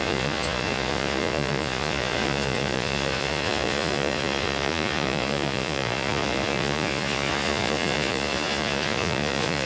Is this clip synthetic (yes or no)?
yes